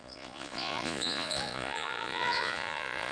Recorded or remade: remade